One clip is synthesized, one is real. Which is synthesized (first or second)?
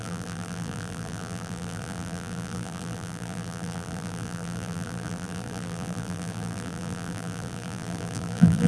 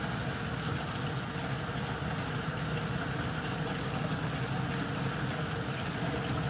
first